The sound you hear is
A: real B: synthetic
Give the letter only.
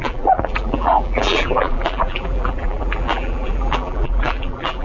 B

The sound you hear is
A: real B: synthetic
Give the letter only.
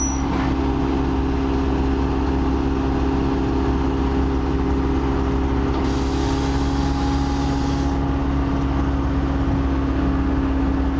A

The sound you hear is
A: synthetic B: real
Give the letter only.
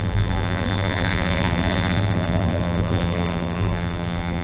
A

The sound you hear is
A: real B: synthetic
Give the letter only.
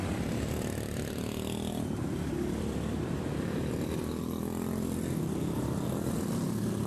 B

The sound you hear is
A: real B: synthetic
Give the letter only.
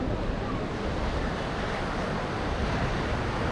A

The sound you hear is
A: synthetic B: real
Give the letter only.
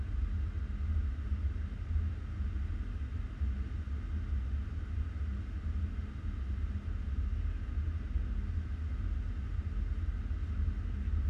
B